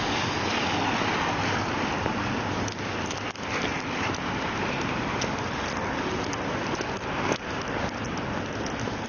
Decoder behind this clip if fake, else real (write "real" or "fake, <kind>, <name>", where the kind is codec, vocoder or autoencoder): real